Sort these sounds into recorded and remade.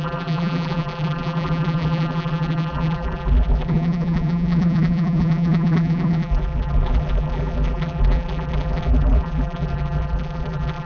remade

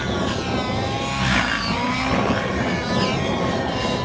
recorded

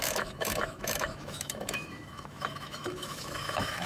remade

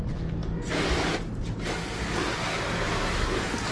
recorded